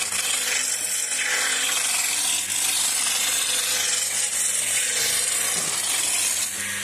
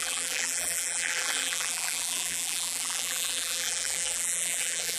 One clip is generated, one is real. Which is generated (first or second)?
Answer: second